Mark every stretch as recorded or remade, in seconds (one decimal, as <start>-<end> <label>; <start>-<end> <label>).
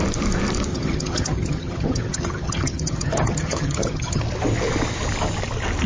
0.0-0.7 recorded; 0.7-4.2 remade; 4.2-5.9 recorded